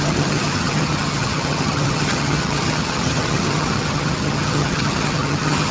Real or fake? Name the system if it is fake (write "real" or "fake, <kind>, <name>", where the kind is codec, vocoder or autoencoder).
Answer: fake, vocoder, HiFi-GAN